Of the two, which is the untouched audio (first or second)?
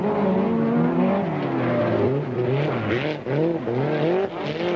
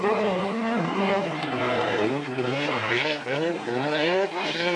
first